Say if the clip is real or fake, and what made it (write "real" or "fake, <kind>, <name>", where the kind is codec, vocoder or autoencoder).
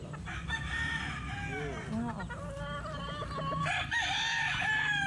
real